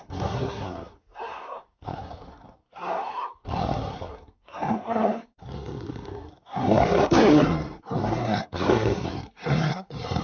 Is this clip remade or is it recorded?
remade